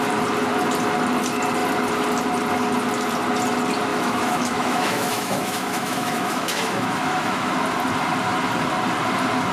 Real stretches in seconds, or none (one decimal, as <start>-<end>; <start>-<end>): 0.0-3.9; 7.5-9.5